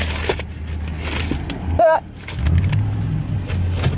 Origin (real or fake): real